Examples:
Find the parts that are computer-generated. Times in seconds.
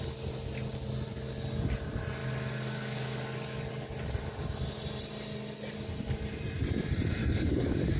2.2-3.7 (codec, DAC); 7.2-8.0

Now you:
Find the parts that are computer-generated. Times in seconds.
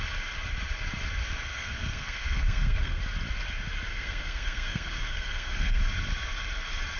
1.5-3.0 (codec, SNAC); 3.9-5.8